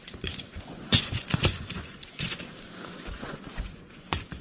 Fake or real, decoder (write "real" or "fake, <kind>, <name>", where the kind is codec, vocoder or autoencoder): fake, vocoder, Vocos